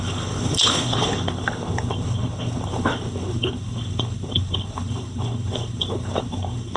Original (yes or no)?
no